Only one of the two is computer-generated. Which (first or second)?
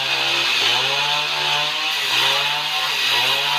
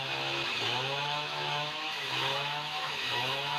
second